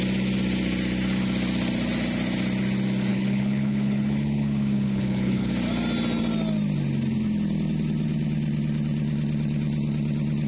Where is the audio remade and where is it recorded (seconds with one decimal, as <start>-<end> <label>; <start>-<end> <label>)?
0.0-3.1 recorded; 3.1-5.5 remade; 5.5-10.5 recorded